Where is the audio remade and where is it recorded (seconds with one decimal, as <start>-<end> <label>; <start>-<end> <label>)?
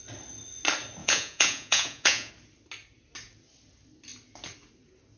0.0-1.0 recorded; 1.0-2.3 remade; 2.3-5.2 recorded